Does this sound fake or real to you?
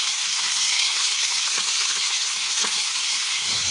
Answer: fake